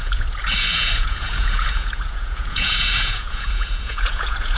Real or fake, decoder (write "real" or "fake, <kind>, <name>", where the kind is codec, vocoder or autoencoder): fake, vocoder, Vocos